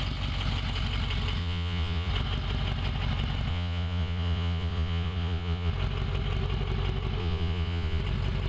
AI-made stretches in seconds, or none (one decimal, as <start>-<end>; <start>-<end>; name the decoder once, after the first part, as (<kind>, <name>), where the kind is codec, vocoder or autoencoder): 1.4-2.1 (vocoder, Vocos); 3.5-5.7; 7.2-8.0